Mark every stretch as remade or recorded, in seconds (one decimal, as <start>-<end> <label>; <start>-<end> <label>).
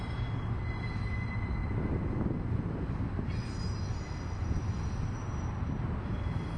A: 0.0-6.6 recorded